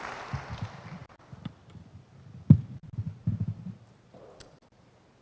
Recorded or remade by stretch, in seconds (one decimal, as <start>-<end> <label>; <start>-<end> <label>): 0.0-2.8 recorded; 2.8-3.6 remade; 3.6-5.2 recorded